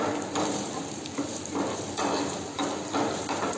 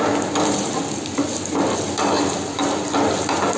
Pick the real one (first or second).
second